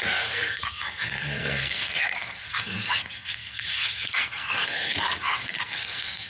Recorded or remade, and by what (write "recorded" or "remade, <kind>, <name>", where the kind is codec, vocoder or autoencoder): remade, codec, SNAC